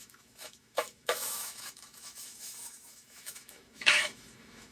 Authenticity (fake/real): fake